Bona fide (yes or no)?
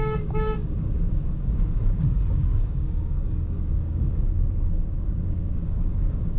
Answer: no